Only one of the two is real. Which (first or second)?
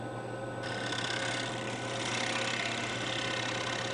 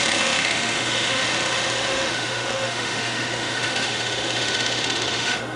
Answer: first